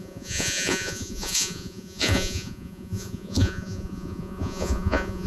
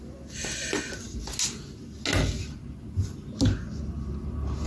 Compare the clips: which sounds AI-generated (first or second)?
first